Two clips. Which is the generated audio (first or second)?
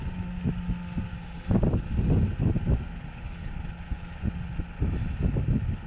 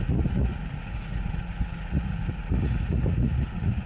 second